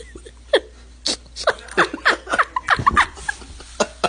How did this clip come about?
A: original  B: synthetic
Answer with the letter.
A